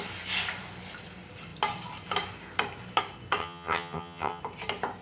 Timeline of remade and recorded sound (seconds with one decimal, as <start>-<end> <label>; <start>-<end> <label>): 0.0-3.4 recorded; 3.4-4.4 remade; 4.4-5.0 recorded